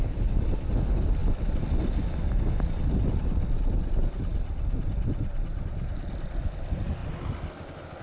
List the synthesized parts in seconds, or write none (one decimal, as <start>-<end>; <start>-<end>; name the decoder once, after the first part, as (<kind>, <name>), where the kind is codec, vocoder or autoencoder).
none